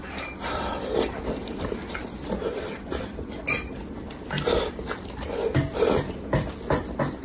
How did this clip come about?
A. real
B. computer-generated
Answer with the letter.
A